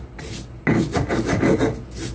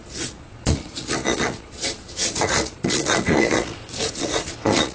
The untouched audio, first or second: first